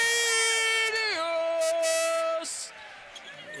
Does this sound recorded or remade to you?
recorded